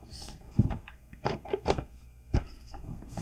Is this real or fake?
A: fake